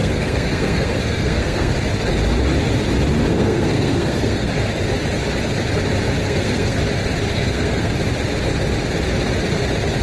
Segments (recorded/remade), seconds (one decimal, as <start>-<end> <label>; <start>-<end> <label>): 0.0-1.7 remade; 1.7-3.3 recorded; 3.3-4.5 remade; 4.5-6.2 recorded; 6.2-6.8 remade; 6.8-7.3 recorded; 7.3-7.9 remade; 7.9-10.0 recorded